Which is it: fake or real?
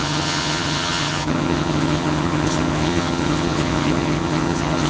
fake